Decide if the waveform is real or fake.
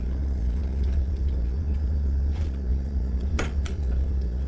fake